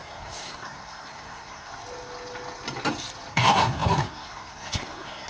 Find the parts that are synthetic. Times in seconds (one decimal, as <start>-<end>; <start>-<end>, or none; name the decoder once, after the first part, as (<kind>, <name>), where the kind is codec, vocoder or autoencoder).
0.0-1.7 (codec, SNAC); 3.3-5.3